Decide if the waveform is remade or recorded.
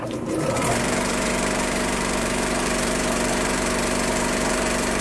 remade